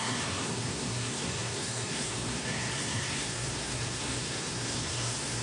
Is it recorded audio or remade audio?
remade